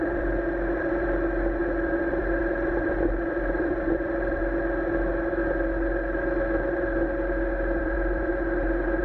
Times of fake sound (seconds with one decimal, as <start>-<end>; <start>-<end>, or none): 0.0-4.4; 7.8-8.3